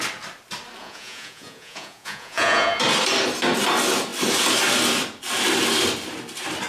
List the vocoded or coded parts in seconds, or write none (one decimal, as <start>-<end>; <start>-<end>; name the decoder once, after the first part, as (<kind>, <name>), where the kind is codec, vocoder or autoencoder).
0.8-2.8 (vocoder, Vocos)